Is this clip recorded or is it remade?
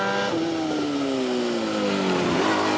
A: recorded